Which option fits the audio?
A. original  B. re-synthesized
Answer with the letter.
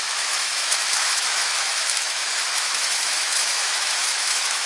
B